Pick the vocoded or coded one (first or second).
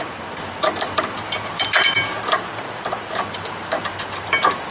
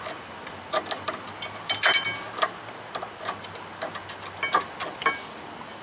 first